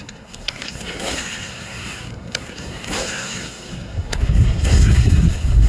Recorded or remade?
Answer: remade